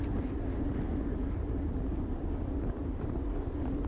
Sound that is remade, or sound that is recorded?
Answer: recorded